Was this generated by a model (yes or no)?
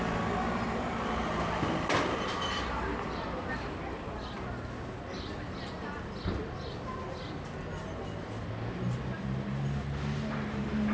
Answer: no